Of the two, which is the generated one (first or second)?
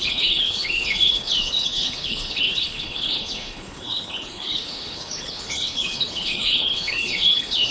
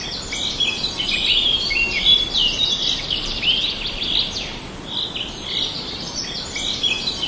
first